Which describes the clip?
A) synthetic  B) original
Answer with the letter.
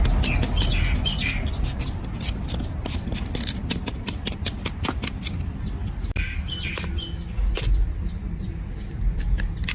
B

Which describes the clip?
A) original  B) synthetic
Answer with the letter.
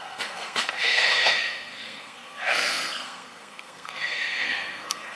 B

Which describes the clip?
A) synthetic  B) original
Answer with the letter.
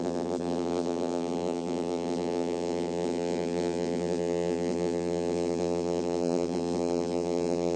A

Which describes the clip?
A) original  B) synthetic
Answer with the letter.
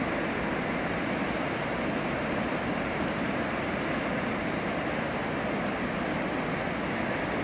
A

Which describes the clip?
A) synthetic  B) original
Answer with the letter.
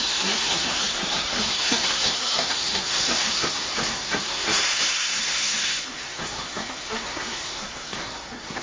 A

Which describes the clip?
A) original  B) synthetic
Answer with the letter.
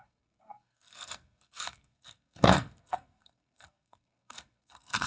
B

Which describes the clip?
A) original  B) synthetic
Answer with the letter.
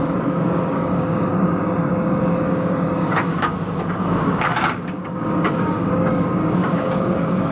B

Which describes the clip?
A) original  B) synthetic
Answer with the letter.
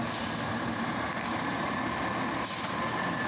A